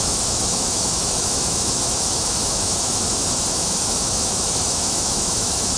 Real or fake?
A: fake